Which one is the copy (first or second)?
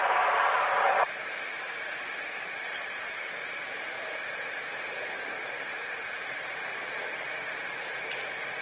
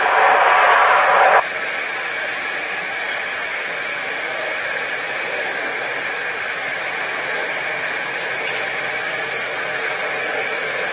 first